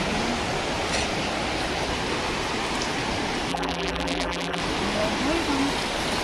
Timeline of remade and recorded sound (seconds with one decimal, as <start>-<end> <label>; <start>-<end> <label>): 0.0-3.5 recorded; 3.5-4.6 remade; 4.6-6.2 recorded